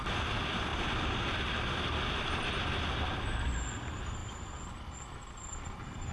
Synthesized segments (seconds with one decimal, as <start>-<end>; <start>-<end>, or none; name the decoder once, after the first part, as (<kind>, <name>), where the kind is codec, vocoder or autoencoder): none